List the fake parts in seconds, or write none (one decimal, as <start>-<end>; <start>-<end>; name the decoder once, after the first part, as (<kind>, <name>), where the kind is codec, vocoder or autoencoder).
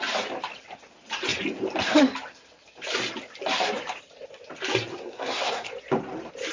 4.9-5.7 (codec, SNAC)